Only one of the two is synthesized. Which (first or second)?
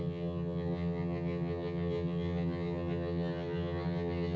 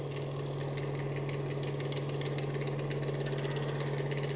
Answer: first